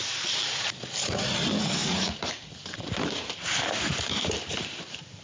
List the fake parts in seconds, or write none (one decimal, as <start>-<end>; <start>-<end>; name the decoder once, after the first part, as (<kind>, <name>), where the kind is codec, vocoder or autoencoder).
0.4-1.2 (vocoder, BigVGAN v2); 1.8-5.2